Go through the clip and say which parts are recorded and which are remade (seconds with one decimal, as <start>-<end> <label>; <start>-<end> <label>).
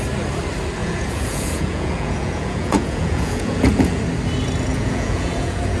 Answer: 0.0-0.8 recorded; 0.8-4.0 remade; 4.0-4.7 recorded; 4.7-5.8 remade